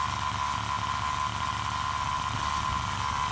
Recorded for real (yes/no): yes